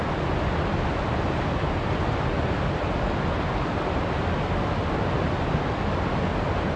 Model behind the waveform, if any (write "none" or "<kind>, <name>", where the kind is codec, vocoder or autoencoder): none